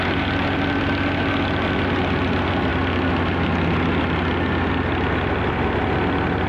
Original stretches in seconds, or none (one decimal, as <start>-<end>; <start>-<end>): 0.0-6.5